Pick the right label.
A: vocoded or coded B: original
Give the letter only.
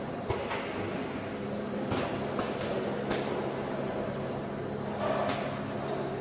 B